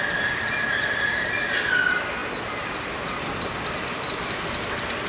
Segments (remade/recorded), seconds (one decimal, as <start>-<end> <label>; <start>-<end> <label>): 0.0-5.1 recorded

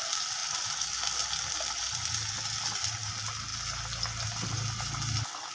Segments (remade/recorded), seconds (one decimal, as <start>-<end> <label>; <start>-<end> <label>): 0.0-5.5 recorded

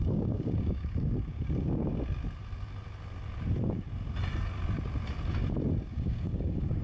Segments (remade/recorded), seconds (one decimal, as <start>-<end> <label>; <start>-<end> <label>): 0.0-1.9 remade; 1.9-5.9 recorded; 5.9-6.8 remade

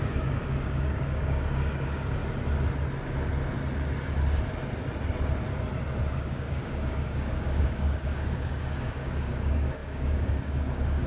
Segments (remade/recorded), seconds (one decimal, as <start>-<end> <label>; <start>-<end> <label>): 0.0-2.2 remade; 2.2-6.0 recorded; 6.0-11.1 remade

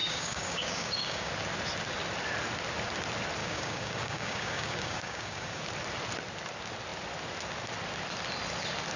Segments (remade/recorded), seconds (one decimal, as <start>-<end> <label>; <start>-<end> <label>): 0.0-1.3 remade; 1.3-3.4 recorded; 3.4-5.6 remade; 5.6-9.0 recorded

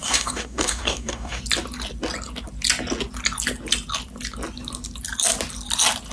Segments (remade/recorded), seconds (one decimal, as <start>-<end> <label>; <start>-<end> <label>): 0.0-1.4 remade; 1.4-6.1 recorded

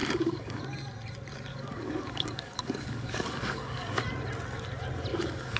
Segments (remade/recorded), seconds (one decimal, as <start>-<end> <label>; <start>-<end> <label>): 0.0-0.6 remade; 0.6-1.5 recorded; 1.5-4.0 remade; 4.0-5.1 recorded; 5.1-5.6 remade